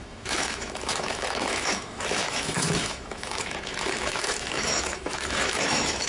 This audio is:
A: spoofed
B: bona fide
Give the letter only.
A